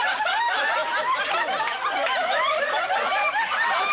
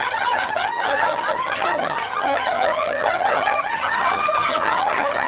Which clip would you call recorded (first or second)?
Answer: first